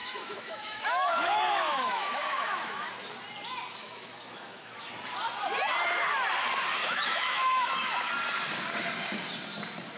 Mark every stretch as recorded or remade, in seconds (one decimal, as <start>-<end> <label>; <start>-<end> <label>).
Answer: 0.0-2.9 remade; 2.9-3.8 recorded; 3.8-4.9 remade; 4.9-6.8 recorded; 6.8-8.1 remade; 8.1-10.0 recorded